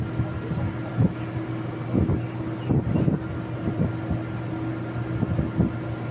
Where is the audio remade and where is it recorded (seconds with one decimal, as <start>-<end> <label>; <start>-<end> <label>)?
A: 0.0-6.1 recorded